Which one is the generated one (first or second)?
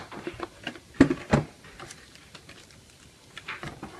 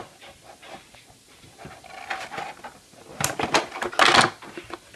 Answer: first